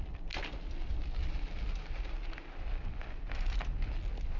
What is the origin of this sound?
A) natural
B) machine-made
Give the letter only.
A